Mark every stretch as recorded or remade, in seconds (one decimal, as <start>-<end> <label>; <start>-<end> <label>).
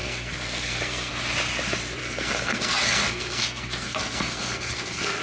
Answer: 0.0-1.1 remade; 1.1-2.0 recorded; 2.0-5.2 remade